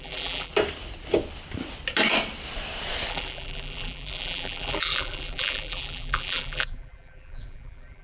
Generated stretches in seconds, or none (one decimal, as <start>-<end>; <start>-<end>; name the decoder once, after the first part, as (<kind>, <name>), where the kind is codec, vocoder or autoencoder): 0.0-0.5 (vocoder, BigVGAN v2); 3.1-8.0